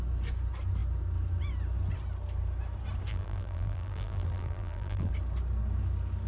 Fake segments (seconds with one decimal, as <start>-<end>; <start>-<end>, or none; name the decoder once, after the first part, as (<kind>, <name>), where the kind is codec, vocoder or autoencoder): 3.1-5.1 (vocoder, BigVGAN v2)